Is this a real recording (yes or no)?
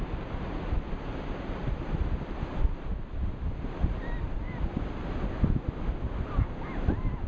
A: yes